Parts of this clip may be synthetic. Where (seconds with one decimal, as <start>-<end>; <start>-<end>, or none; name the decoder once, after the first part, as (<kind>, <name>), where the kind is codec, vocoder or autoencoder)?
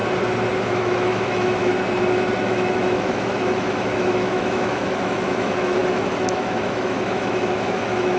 0.6-1.7 (autoencoder, DAC-VAE); 2.4-8.2